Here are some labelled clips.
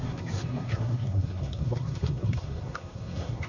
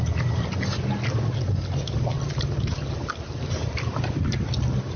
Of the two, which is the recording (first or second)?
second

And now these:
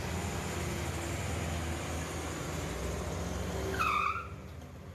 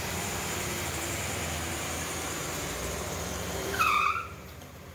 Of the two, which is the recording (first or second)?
first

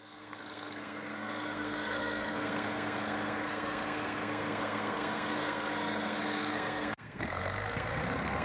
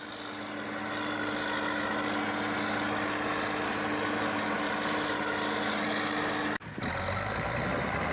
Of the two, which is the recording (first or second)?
second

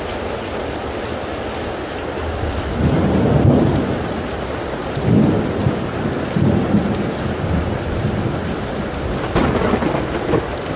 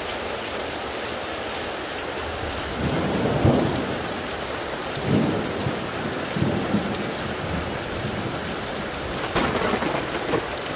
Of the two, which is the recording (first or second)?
first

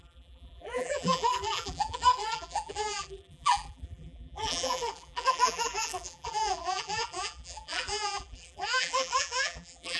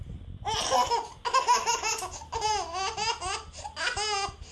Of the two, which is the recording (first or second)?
second